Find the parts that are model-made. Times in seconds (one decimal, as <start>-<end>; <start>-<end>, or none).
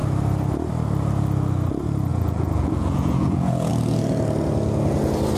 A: 2.1-3.7